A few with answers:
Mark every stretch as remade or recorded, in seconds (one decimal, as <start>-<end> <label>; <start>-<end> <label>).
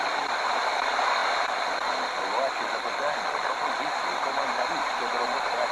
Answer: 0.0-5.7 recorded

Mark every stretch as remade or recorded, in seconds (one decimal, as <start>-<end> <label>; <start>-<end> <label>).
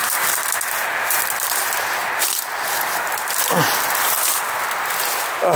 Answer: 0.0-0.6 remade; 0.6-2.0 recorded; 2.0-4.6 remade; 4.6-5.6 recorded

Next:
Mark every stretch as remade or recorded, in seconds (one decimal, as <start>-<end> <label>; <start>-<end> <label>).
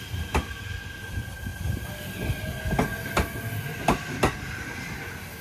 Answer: 0.0-5.4 recorded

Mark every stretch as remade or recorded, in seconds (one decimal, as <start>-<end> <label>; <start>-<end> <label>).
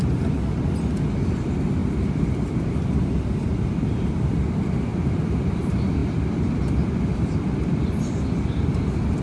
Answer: 0.0-1.8 recorded; 1.8-3.7 remade; 3.7-4.9 recorded; 4.9-5.6 remade; 5.6-6.0 recorded; 6.0-9.2 remade